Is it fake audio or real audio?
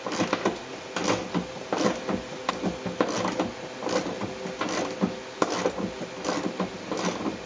real